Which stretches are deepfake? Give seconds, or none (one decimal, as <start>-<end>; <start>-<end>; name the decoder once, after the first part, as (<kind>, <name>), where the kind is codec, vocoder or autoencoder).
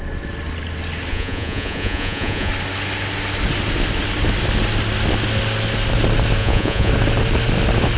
1.1-2.5 (vocoder, Vocos); 6.4-6.9